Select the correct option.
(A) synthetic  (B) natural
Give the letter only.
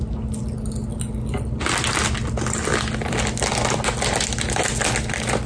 B